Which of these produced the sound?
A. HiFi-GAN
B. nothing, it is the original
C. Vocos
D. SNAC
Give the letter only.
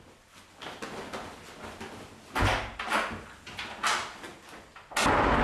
B